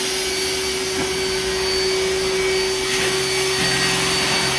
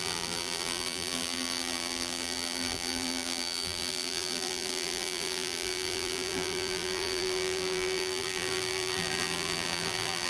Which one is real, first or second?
first